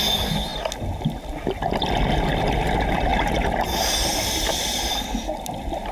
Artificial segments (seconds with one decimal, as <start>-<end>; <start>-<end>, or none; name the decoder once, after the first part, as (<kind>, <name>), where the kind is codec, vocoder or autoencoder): none